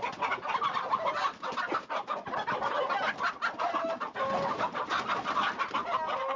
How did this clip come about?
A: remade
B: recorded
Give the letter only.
B